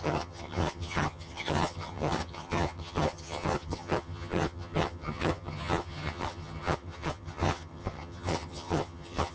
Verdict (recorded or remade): remade